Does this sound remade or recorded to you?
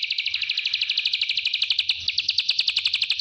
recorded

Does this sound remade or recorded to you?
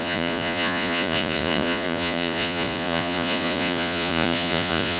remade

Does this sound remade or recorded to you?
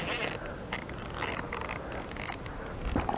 recorded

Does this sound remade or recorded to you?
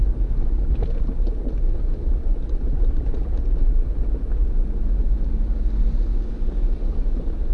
recorded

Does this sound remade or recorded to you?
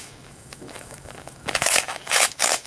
remade